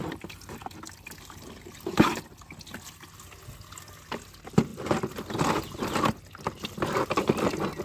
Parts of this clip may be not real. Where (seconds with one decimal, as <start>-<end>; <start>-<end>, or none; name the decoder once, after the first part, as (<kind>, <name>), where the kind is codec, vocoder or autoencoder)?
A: none